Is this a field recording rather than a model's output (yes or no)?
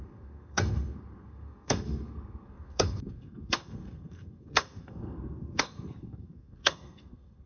no